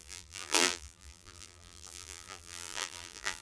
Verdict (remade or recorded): remade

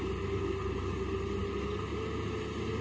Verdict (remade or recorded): recorded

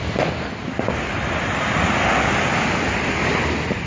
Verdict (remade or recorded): recorded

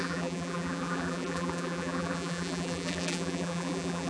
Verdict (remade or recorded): remade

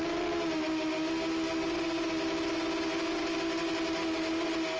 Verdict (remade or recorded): recorded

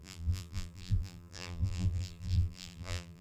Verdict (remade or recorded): remade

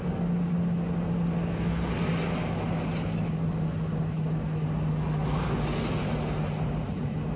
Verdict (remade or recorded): recorded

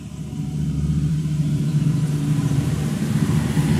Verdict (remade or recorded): remade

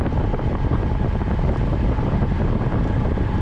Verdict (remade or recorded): recorded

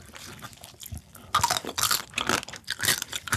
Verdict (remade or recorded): recorded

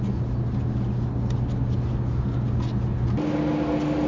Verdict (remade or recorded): recorded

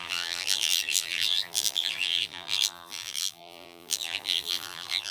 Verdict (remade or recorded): remade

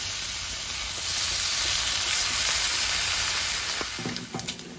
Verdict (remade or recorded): recorded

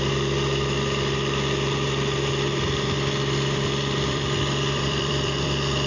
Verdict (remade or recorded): remade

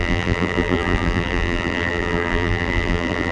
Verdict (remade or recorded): remade